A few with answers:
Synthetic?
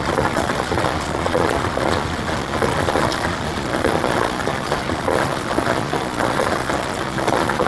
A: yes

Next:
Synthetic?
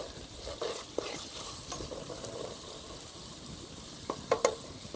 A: no